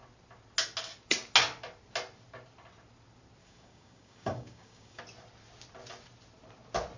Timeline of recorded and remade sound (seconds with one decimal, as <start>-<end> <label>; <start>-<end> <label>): 0.0-3.4 recorded; 3.4-5.0 remade; 5.0-7.0 recorded